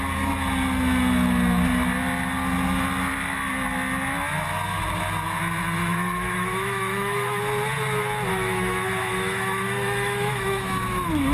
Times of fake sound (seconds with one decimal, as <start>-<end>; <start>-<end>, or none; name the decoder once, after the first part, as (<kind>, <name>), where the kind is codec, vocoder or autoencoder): 5.8-7.4 (autoencoder, DAC-VAE); 8.3-10.8